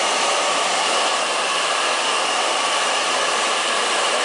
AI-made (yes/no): no